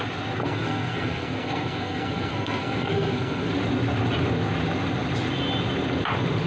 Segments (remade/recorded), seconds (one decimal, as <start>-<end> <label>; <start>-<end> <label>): 0.0-0.4 recorded; 0.4-3.5 remade; 3.5-6.5 recorded